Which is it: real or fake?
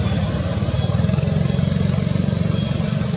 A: real